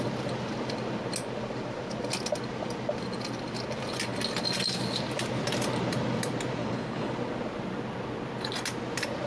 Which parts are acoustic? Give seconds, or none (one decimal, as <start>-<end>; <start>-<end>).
0.0-6.6; 7.1-9.3